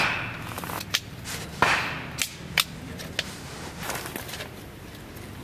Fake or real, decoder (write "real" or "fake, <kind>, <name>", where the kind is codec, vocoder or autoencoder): real